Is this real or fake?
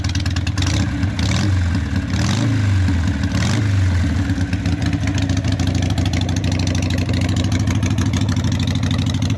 real